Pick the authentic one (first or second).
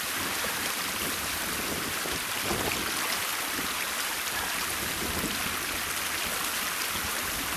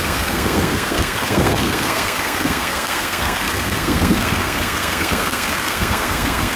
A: first